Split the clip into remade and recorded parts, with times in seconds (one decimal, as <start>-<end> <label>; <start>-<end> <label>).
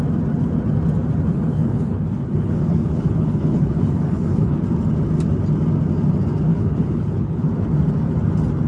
0.0-1.3 recorded; 1.3-4.6 remade; 4.6-6.5 recorded; 6.5-7.5 remade; 7.5-8.7 recorded